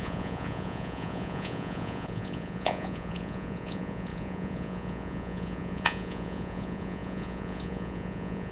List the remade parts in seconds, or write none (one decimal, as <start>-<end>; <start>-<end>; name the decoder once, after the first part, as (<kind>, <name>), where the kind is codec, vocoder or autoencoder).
0.0-8.5 (vocoder, Vocos)